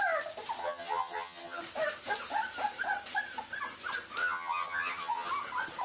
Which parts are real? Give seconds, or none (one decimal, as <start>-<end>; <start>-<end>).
0.0-0.6; 1.6-4.2; 5.3-5.8